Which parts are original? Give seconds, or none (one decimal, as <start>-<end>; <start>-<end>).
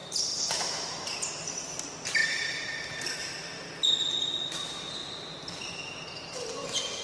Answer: 0.0-2.2; 3.5-7.0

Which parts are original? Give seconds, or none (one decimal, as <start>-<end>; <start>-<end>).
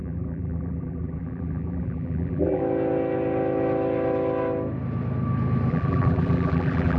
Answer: 2.6-5.7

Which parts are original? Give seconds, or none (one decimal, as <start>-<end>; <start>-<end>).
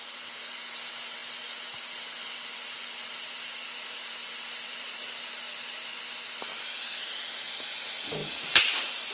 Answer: 0.0-6.5; 7.0-8.2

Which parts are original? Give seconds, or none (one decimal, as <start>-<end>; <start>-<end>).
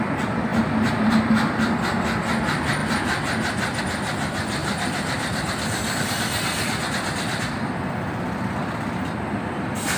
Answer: 0.0-0.5; 1.1-4.6; 6.1-10.0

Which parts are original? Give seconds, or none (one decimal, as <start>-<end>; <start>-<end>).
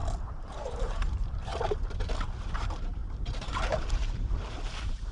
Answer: 0.0-0.6; 1.5-2.5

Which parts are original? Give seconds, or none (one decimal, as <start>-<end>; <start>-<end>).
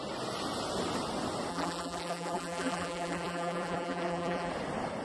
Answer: 0.0-1.5; 4.5-5.0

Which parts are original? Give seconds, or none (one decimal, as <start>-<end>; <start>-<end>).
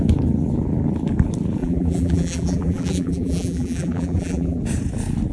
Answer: 0.0-1.6; 4.6-5.3